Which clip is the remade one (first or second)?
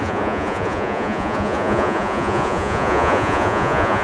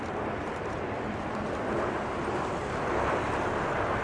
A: first